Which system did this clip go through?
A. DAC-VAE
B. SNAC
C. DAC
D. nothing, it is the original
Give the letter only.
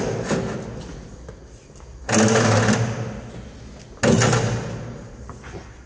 D